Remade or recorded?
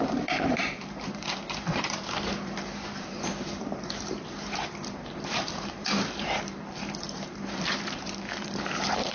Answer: remade